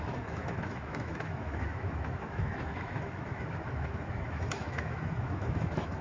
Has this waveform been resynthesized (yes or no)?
yes